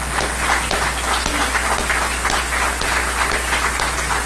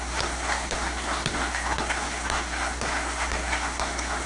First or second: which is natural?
first